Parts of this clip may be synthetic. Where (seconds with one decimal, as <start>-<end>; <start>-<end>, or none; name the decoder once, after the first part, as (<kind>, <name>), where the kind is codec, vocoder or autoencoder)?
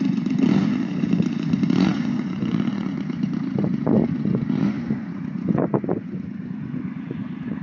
0.0-7.6 (vocoder, Vocos)